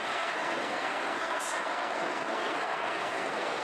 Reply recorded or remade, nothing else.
remade